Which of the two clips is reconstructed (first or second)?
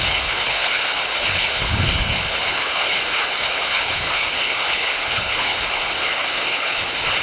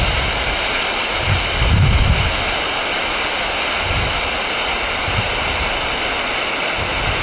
first